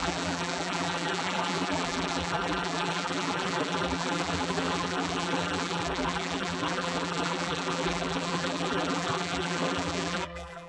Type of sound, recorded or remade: remade